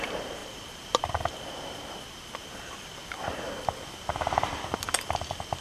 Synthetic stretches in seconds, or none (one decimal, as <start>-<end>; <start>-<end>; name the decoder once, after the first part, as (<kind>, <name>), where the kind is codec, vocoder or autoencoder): none